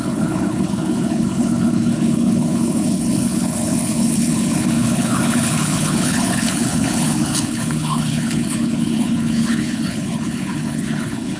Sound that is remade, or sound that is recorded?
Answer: remade